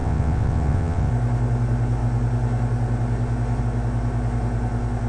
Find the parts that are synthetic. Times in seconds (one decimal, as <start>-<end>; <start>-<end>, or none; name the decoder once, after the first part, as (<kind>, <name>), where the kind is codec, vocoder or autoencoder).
0.0-1.1 (vocoder, WaveNeXt)